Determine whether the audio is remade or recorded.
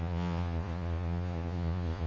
remade